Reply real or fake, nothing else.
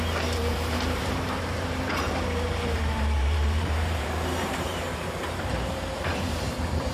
fake